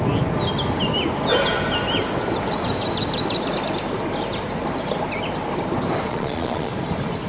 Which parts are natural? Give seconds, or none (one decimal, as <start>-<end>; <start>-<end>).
0.0-6.1; 6.7-7.3